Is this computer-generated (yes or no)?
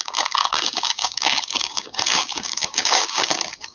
yes